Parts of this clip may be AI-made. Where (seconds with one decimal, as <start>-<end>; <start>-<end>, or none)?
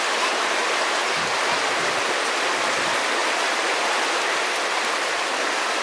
none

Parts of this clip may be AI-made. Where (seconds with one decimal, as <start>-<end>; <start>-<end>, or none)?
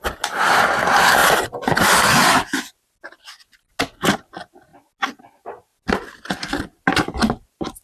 none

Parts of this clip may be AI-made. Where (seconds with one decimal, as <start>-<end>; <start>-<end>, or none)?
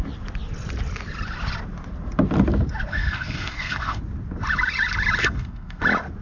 2.9-4.0; 5.2-5.8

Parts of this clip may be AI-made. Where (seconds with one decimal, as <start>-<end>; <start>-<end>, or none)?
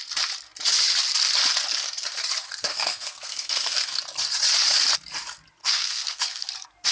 2.6-4.0; 5.6-6.5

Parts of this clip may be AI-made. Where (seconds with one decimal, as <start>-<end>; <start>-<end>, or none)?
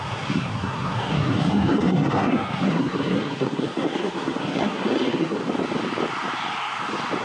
0.0-5.4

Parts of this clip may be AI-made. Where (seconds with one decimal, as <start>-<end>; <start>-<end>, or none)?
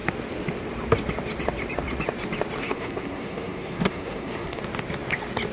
2.6-4.6